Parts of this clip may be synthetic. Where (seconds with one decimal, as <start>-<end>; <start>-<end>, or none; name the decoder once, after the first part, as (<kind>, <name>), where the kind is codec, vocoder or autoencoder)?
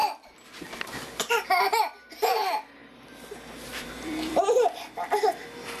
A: 0.0-2.8 (vocoder, BigVGAN v2); 3.5-5.8